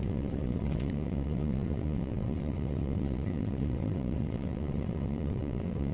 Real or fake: fake